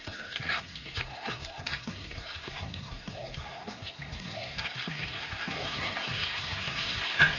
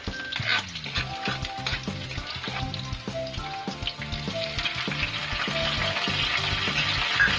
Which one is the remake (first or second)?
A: first